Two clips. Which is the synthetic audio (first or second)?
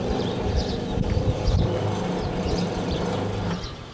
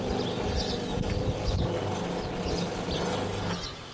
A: first